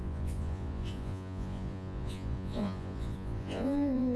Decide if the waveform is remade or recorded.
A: remade